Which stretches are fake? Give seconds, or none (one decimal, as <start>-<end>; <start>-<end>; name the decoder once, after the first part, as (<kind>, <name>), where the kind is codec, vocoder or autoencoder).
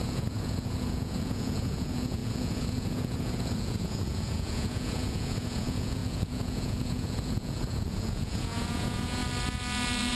0.0-9.2 (vocoder, Vocos)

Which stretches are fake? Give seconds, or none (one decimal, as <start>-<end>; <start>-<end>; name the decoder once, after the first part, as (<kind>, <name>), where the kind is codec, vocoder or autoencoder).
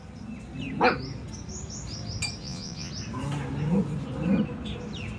2.4-2.9 (vocoder, Vocos)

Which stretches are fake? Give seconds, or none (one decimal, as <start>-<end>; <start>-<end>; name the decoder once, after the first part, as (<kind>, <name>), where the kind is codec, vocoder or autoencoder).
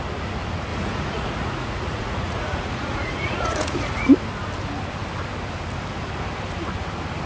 0.7-4.1 (vocoder, Vocos)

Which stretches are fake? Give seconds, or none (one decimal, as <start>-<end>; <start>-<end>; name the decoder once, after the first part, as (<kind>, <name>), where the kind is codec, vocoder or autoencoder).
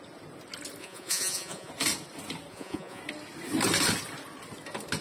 0.8-1.7 (vocoder, Vocos); 2.5-3.0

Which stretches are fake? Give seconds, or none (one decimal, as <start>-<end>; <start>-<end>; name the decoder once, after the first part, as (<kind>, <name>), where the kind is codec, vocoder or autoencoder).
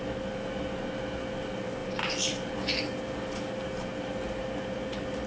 none